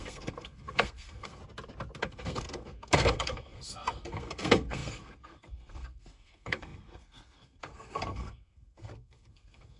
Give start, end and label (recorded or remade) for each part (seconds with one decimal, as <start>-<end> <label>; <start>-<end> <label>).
0.0-1.4 remade; 1.4-2.0 recorded; 2.0-9.8 remade